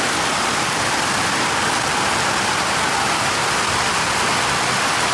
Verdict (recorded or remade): recorded